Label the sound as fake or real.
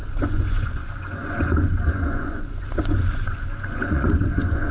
fake